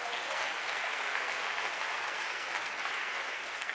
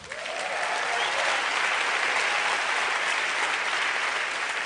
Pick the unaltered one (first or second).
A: second